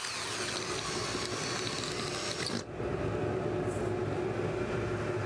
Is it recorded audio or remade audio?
recorded